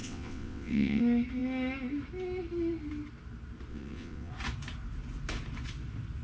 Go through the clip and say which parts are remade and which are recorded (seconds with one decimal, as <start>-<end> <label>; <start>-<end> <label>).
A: 0.0-1.0 remade; 1.0-3.7 recorded; 3.7-4.3 remade; 4.3-6.2 recorded